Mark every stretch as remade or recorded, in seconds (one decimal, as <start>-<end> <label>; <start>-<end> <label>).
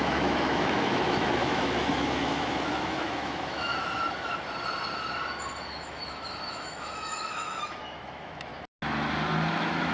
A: 0.0-3.7 remade; 3.7-5.7 recorded; 5.7-8.5 remade; 8.5-9.5 recorded; 9.5-9.9 remade